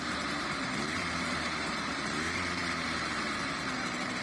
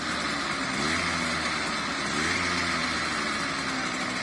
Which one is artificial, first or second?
first